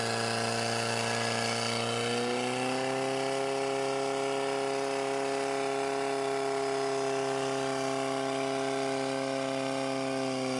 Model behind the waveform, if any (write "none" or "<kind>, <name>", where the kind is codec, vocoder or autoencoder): none